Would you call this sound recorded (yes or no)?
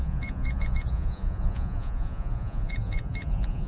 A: no